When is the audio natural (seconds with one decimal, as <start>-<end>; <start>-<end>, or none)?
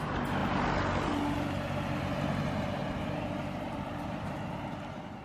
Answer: 0.0-2.8; 4.7-5.2